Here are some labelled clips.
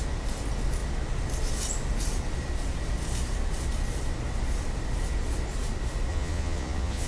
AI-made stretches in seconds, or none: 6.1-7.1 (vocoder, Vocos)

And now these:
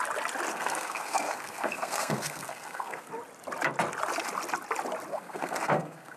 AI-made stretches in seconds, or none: 0.5-3.1 (codec, SNAC); 5.1-6.2

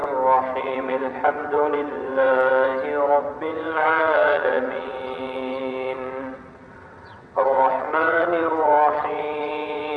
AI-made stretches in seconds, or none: 0.6-2.7 (vocoder, WaveNeXt); 3.2-10.0

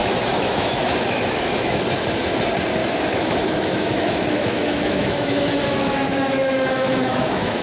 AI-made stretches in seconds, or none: 0.0-1.8 (autoencoder, DAC-VAE); 2.8-7.6

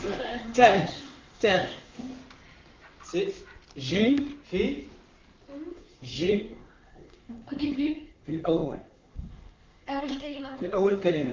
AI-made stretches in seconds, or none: 0.0-2.1 (codec, SNAC); 3.9-4.3; 5.7-11.3

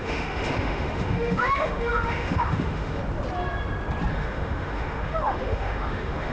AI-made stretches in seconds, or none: 0.0-3.0 (autoencoder, DAC-VAE); 4.1-6.3

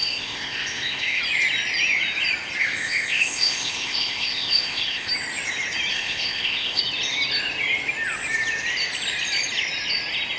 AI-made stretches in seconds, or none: 0.0-1.2 (codec, ZipCodec); 2.6-5.1; 5.9-6.8